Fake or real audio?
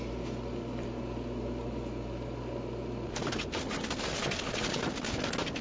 real